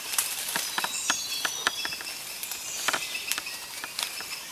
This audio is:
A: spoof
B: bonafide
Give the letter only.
B